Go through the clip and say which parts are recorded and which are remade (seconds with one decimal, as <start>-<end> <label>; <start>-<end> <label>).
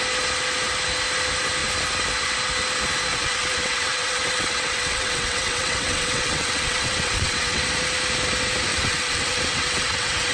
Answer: 0.0-3.1 recorded; 3.1-7.6 remade; 7.6-8.7 recorded; 8.7-10.3 remade